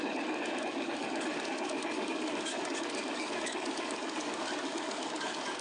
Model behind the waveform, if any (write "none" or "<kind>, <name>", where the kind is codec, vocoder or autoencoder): codec, DAC